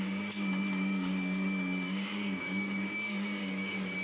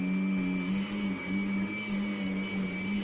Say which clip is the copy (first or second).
first